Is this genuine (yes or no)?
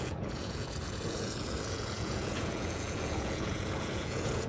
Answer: no